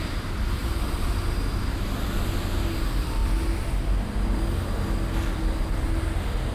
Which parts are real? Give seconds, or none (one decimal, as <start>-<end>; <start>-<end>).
0.0-0.6; 1.3-3.2; 4.4-6.5